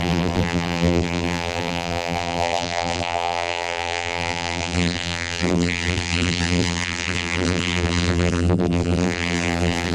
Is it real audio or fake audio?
fake